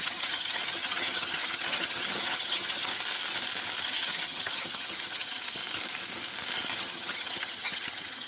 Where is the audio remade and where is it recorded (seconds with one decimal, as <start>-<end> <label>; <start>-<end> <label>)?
0.0-2.9 remade; 2.9-3.8 recorded; 3.8-5.6 remade; 5.6-6.8 recorded; 6.8-8.3 remade